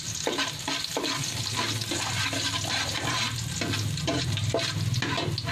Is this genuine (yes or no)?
yes